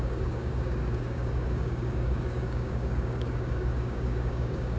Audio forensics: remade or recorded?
remade